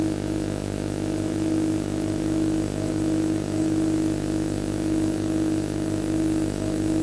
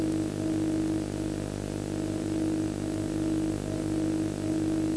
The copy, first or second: first